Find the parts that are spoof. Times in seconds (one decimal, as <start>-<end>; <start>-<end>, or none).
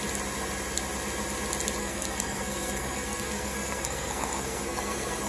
1.8-5.3